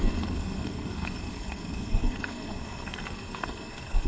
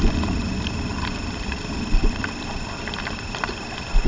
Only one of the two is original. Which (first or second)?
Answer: second